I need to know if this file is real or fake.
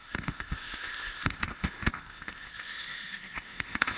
fake